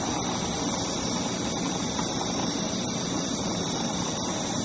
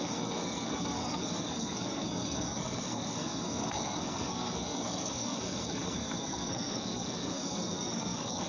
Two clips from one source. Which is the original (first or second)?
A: first